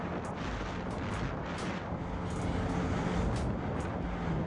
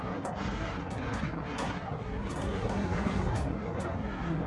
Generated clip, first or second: second